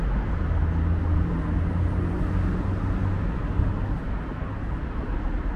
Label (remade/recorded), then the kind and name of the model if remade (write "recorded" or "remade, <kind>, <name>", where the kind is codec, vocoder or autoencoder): recorded